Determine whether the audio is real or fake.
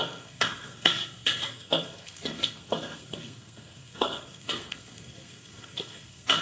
fake